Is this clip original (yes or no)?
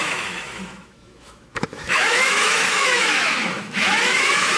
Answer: no